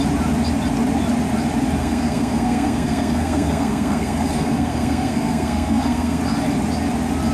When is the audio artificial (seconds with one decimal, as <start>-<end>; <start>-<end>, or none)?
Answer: 1.8-6.2